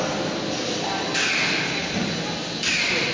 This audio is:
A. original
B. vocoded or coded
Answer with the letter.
A